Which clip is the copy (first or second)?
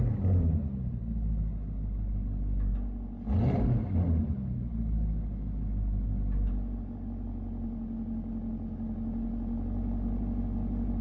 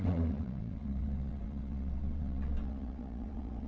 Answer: second